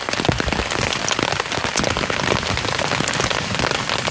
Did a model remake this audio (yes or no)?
no